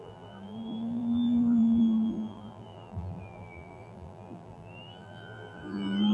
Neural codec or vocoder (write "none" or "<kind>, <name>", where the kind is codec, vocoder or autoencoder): vocoder, BigVGAN v2